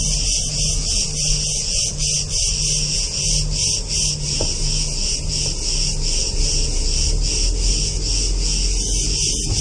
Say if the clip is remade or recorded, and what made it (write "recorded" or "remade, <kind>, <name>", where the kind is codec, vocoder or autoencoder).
recorded